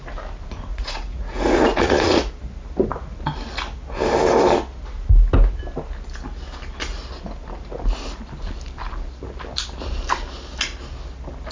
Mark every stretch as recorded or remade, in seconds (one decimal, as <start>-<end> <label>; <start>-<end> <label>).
0.0-0.7 recorded; 0.7-2.3 remade; 2.3-11.5 recorded